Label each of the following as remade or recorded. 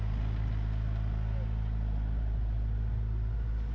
recorded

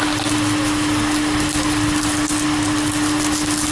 recorded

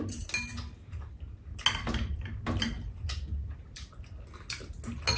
recorded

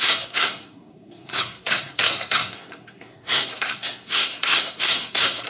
remade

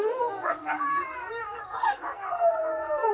remade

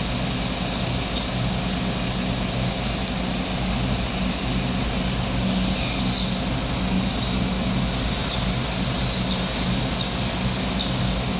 recorded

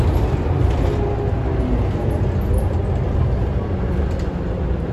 recorded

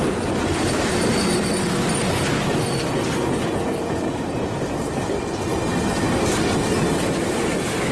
recorded